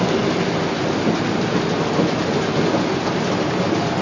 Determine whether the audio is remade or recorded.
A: recorded